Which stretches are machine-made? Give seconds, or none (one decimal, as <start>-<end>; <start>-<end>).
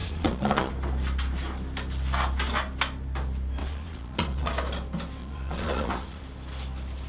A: 0.0-0.7; 3.6-4.5; 5.2-6.2